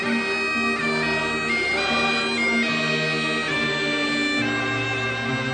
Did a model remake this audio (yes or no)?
no